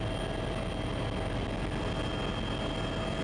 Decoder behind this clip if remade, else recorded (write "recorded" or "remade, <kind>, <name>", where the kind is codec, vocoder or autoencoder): recorded